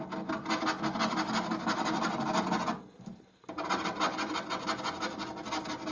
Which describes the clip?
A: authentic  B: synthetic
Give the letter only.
A